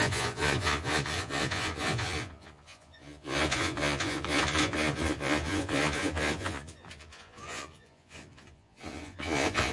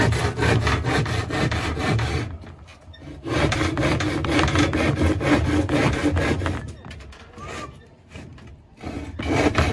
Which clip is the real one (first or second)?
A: second